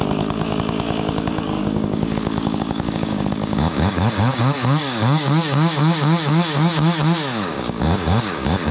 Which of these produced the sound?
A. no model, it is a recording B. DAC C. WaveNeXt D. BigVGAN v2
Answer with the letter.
B